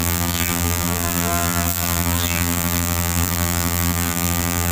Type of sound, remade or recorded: remade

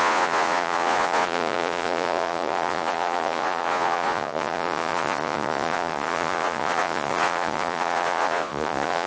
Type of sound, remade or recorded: remade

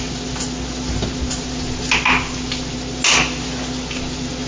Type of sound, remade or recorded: recorded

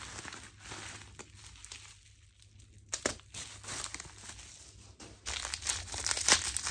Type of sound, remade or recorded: recorded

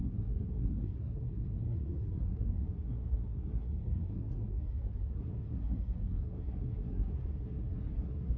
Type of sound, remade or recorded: remade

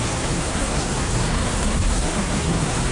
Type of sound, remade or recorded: remade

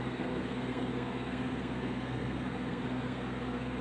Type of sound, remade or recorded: remade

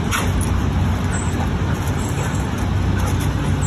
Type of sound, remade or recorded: recorded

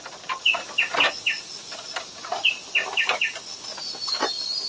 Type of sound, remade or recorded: recorded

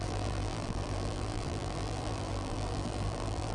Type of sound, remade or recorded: remade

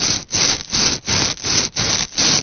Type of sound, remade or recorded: recorded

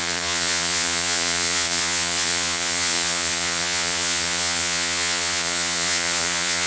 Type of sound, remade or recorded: remade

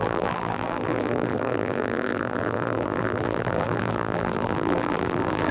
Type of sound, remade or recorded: remade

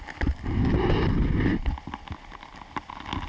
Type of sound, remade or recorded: recorded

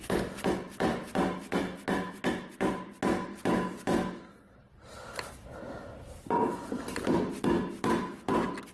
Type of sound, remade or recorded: recorded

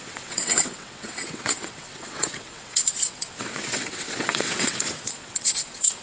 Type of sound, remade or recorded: remade